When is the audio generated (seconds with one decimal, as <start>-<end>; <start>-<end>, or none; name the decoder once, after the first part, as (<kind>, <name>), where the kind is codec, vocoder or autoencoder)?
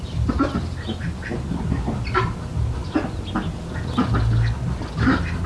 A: none